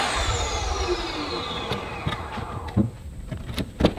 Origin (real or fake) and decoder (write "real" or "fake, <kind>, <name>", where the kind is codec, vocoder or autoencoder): real